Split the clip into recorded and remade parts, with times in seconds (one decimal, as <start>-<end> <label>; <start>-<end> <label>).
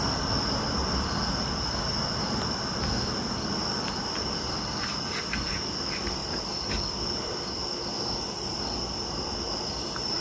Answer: 0.0-10.2 recorded